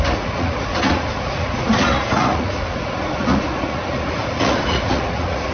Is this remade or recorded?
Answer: remade